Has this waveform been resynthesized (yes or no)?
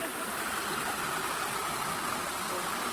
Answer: no